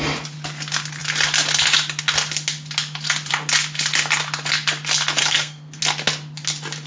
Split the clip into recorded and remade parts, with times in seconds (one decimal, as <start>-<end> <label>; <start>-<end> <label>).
0.0-5.2 recorded; 5.2-5.8 remade; 5.8-6.9 recorded

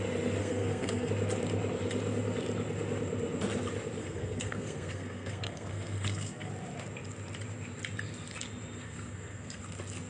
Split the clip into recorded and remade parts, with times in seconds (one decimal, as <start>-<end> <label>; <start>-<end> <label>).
0.0-0.4 recorded; 0.4-1.1 remade; 1.1-4.0 recorded; 4.0-6.5 remade; 6.5-8.8 recorded; 8.8-9.6 remade; 9.6-10.1 recorded